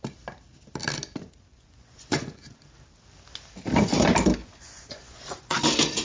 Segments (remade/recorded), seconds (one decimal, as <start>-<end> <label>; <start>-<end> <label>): 0.0-1.5 recorded; 1.5-2.6 remade; 2.6-4.4 recorded; 4.4-5.6 remade; 5.6-6.0 recorded